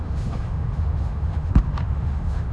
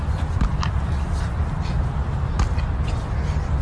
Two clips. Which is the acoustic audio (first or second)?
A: second